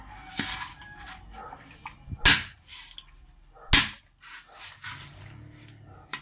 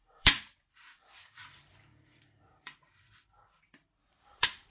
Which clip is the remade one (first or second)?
second